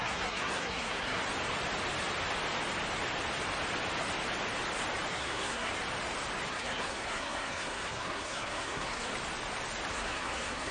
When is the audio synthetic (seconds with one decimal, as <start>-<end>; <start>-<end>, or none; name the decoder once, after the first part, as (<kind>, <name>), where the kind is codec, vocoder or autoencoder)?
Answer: 0.0-1.2 (codec, SNAC); 5.1-5.7; 6.5-9.1; 9.9-10.7